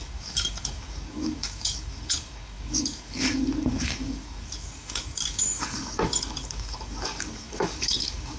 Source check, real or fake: fake